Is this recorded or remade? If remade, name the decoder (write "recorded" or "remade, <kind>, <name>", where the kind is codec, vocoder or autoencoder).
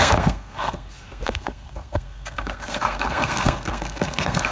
remade, codec, SNAC